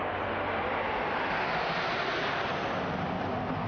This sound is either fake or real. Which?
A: real